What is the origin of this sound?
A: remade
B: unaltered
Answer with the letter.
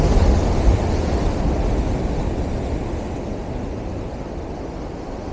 B